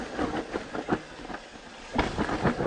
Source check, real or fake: real